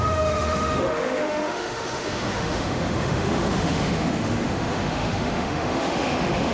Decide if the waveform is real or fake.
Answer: fake